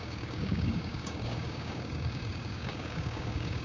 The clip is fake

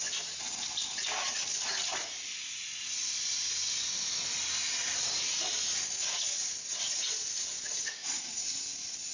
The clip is real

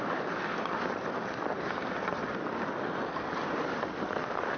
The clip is real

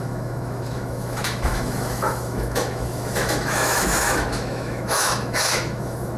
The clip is fake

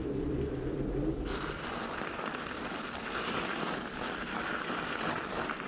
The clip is real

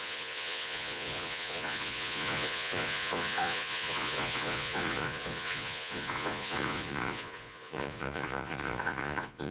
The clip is fake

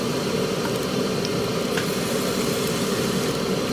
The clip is real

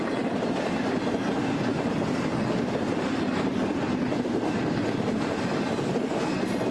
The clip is real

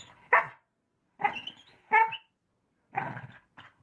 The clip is real